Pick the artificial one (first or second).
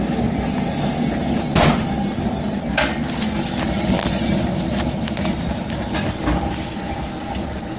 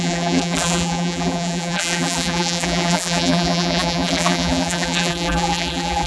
second